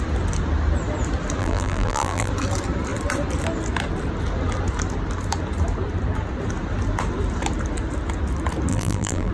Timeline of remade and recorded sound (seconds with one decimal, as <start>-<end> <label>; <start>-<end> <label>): 0.0-1.4 recorded; 1.4-2.3 remade; 2.3-8.7 recorded; 8.7-9.3 remade